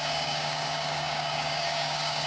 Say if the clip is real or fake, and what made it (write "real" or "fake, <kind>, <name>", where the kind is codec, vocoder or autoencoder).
fake, codec, DAC